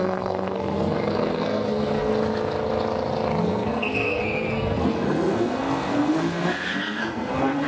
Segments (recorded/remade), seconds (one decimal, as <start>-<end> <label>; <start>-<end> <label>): 0.0-2.1 remade; 2.1-3.4 recorded; 3.4-7.7 remade